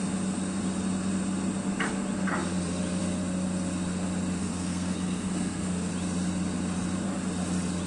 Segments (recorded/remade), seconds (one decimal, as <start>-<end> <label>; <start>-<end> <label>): 0.0-4.4 recorded; 4.4-5.9 remade; 5.9-7.9 recorded